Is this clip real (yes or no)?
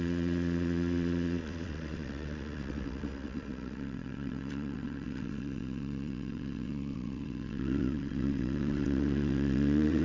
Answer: no